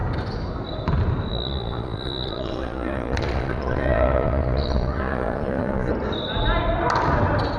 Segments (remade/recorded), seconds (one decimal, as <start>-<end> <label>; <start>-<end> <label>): 0.0-1.3 recorded; 1.3-5.9 remade; 5.9-7.6 recorded